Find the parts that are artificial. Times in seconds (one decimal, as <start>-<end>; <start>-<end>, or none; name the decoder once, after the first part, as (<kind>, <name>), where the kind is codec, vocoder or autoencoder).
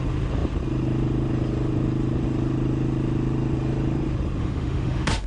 4.4-5.3 (autoencoder, DAC-VAE)